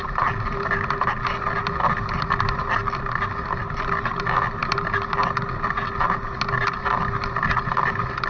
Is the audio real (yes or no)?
yes